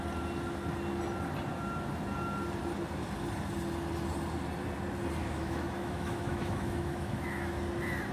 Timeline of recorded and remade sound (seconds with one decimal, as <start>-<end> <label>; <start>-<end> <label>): 0.0-5.2 recorded; 5.2-7.6 remade; 7.6-8.1 recorded